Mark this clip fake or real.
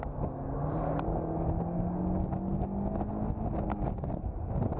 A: real